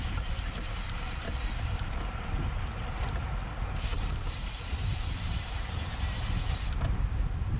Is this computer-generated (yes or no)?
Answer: no